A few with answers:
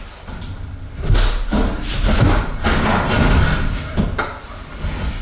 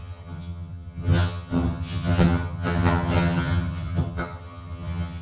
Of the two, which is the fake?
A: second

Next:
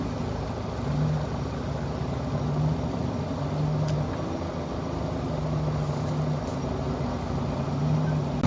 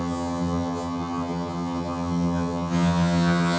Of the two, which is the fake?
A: second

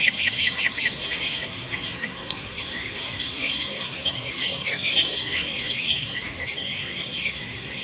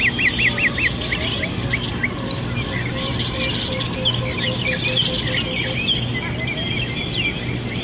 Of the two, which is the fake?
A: first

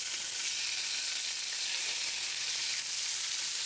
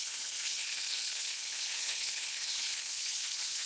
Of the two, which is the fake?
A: second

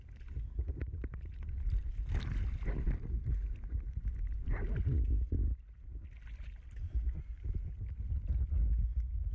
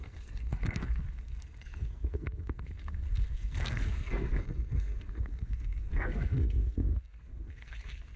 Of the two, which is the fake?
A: second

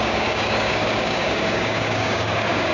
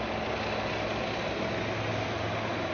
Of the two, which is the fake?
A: first